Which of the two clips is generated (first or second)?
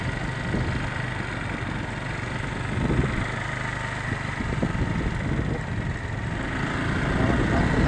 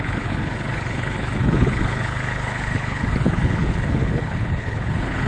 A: second